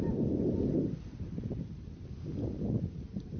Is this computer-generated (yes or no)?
yes